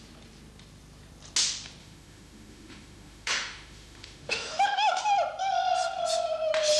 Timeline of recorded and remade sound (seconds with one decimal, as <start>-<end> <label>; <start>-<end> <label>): 0.0-1.8 recorded; 1.8-5.0 remade; 5.0-6.8 recorded